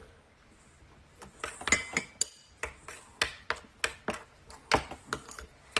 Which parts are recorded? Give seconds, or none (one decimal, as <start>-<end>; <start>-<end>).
0.0-5.8